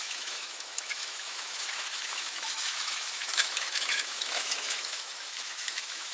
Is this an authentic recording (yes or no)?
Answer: no